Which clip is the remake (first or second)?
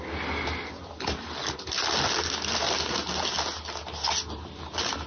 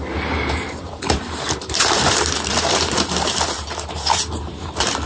second